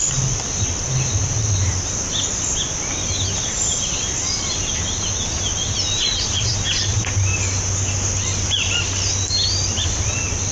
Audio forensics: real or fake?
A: real